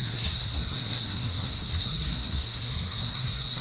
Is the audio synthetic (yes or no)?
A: yes